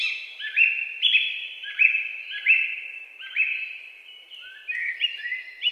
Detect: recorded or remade remade